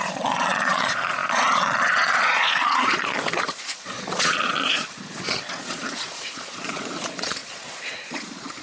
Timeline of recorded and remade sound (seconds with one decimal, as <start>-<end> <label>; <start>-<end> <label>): 0.0-8.6 remade